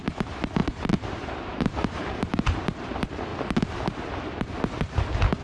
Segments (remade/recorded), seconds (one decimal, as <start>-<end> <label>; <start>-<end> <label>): 0.0-3.3 remade; 3.3-4.4 recorded; 4.4-5.4 remade

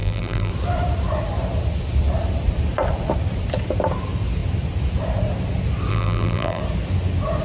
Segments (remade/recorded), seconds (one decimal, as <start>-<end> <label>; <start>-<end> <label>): 0.0-0.5 remade; 0.5-5.9 recorded; 5.9-6.6 remade; 6.6-7.4 recorded

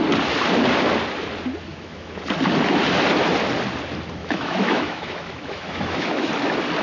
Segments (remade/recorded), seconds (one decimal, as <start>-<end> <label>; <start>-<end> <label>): 0.0-1.7 recorded; 1.7-2.2 remade; 2.2-4.2 recorded; 4.2-6.3 remade; 6.3-6.8 recorded

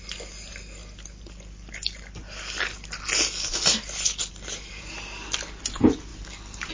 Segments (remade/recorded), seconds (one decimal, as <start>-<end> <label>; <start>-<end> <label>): 0.0-6.7 remade

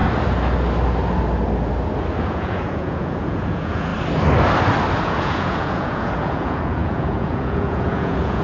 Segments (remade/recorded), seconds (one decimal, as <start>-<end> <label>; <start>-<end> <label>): 0.0-2.2 recorded; 2.2-3.9 remade; 3.9-5.0 recorded; 5.0-8.4 remade

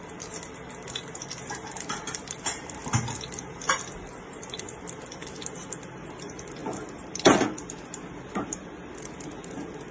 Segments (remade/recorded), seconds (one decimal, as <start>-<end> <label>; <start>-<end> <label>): 0.0-9.9 recorded